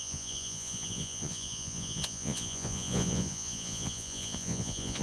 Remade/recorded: remade